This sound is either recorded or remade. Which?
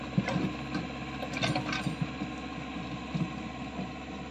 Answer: recorded